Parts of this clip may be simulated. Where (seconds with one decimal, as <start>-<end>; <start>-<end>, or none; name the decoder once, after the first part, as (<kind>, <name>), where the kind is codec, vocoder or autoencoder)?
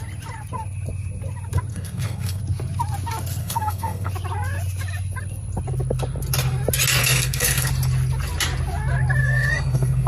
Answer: 1.7-2.4 (codec, SNAC); 3.4-4.1; 7.0-7.7; 9.2-10.1